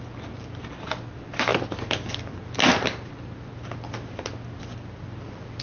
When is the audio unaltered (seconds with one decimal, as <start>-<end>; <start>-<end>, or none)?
0.0-5.6